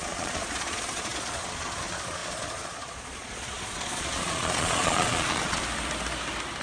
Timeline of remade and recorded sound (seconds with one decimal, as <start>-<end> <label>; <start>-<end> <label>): 0.0-5.6 remade; 5.6-6.6 recorded